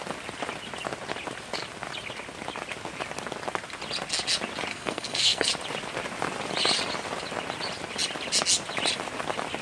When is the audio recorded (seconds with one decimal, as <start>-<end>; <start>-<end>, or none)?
0.0-4.7; 5.5-9.6